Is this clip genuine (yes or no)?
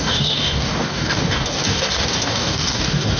no